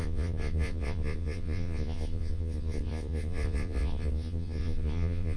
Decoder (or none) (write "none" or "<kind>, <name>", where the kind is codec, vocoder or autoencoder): vocoder, Vocos